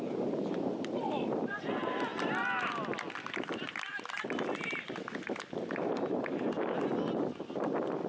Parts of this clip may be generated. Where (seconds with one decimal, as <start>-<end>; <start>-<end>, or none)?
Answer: none

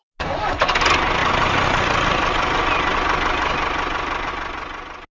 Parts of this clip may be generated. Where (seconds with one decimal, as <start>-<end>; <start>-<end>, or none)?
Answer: none

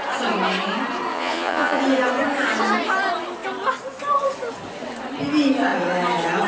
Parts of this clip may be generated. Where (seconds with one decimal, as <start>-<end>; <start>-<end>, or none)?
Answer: 1.1-1.8

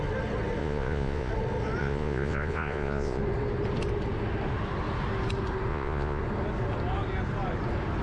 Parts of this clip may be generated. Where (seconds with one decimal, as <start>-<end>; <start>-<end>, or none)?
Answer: 0.6-1.3; 1.8-3.2; 5.7-6.2

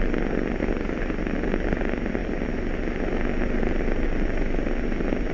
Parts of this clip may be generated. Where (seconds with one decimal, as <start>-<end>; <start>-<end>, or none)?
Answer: none

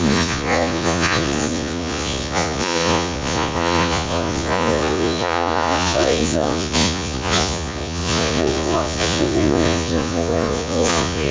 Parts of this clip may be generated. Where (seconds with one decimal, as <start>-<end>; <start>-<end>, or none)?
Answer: 0.0-11.3